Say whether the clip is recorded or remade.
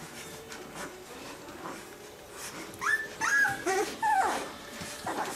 remade